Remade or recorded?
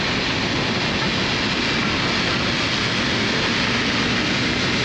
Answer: recorded